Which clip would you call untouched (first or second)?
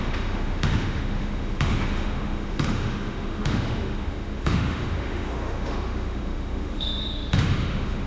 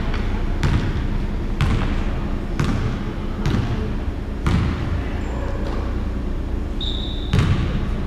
second